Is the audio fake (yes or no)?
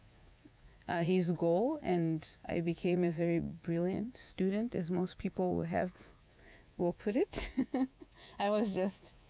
yes